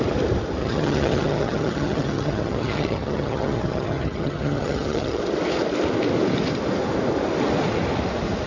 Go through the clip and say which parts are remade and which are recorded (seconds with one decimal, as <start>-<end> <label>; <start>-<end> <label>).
0.0-0.6 recorded; 0.6-5.2 remade; 5.2-8.5 recorded